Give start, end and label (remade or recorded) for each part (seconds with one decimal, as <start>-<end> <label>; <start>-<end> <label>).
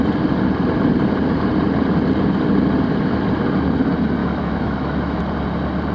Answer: 0.0-4.2 recorded; 4.2-5.2 remade; 5.2-5.9 recorded